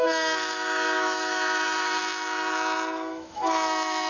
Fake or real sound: fake